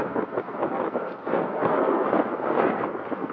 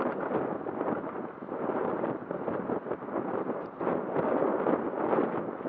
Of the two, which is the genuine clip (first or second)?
second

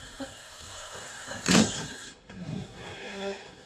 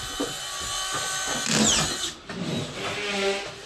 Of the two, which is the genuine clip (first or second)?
second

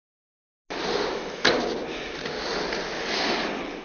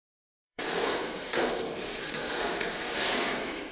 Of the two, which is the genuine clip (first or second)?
first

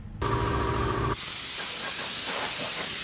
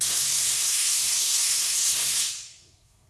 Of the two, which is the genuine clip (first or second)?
first